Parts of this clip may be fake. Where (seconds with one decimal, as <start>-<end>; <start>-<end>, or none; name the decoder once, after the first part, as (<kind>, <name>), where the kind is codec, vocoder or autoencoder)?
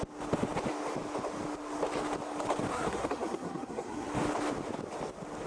2.7-4.1 (codec, SNAC)